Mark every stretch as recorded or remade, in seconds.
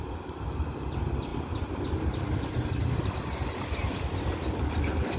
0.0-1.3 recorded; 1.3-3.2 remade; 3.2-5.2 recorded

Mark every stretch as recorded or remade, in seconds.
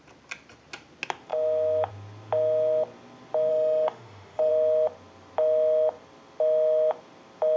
0.0-3.5 recorded; 3.5-4.5 remade; 4.5-7.6 recorded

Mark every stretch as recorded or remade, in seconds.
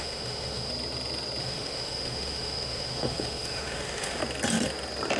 0.0-0.7 remade; 0.7-1.4 recorded; 1.4-4.2 remade; 4.2-5.2 recorded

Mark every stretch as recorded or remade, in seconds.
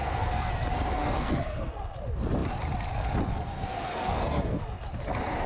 0.0-0.5 remade; 0.5-1.0 recorded; 1.0-1.7 remade; 1.7-3.3 recorded; 3.3-4.6 remade; 4.6-5.5 recorded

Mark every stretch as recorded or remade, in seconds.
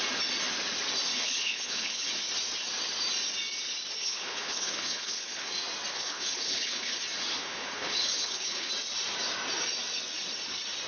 0.0-1.1 recorded; 1.1-2.1 remade; 2.1-4.0 recorded; 4.0-5.5 remade; 5.5-5.9 recorded; 5.9-7.0 remade; 7.0-7.4 recorded; 7.4-8.7 remade; 8.7-10.9 recorded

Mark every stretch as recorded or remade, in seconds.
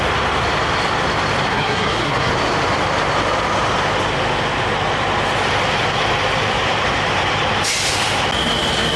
0.0-1.5 recorded; 1.5-2.3 remade; 2.3-9.0 recorded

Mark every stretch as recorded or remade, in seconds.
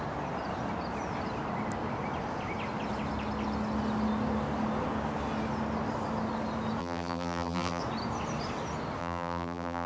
0.0-6.8 recorded; 6.8-7.8 remade; 7.8-9.0 recorded; 9.0-9.9 remade